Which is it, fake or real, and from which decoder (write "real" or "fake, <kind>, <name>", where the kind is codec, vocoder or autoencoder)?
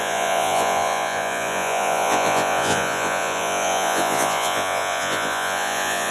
fake, vocoder, Vocos